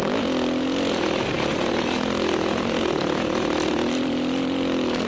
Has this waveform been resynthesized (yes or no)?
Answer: no